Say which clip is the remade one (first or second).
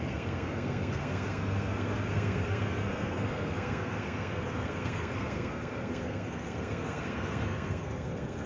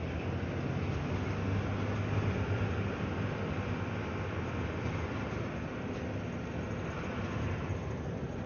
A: first